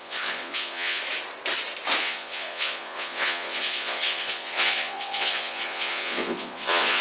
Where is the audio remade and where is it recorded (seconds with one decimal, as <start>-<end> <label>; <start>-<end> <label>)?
0.0-1.0 remade; 1.0-2.0 recorded; 2.0-7.0 remade